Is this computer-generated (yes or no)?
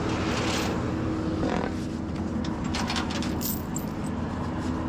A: no